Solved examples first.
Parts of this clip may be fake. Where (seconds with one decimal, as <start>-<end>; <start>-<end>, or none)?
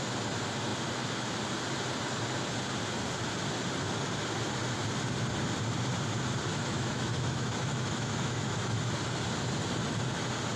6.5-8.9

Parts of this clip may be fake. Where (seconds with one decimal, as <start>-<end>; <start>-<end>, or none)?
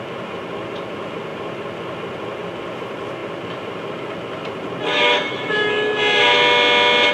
4.9-5.7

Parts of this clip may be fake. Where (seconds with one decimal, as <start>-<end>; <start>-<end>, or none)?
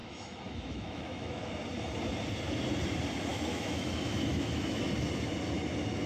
0.0-1.5; 3.3-4.8